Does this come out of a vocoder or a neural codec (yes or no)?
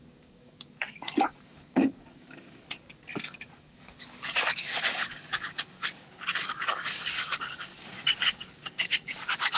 yes